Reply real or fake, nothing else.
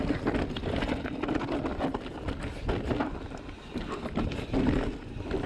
real